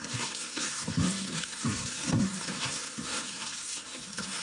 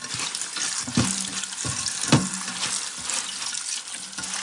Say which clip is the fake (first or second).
first